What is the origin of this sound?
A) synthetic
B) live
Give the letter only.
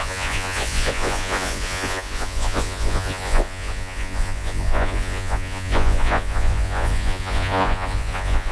A